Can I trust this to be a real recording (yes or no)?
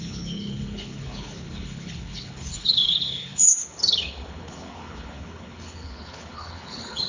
no